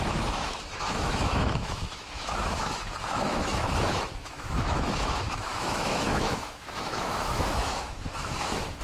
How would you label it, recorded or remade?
remade